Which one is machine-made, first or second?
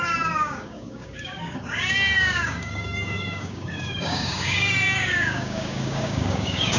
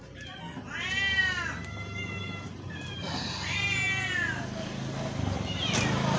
first